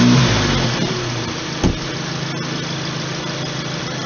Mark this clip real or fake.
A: real